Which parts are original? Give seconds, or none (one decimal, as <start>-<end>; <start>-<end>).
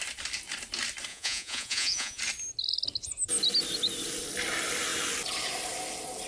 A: 0.0-1.1; 2.2-6.3